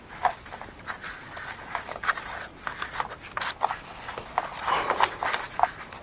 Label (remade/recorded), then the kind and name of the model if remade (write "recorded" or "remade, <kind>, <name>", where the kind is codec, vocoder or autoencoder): recorded